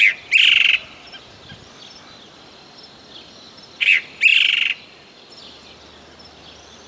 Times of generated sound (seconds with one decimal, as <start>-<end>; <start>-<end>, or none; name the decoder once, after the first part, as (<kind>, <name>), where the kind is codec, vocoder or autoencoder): none